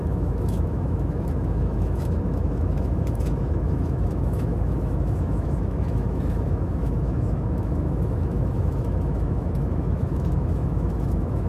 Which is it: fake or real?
fake